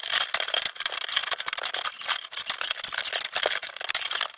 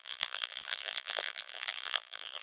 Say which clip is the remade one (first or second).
second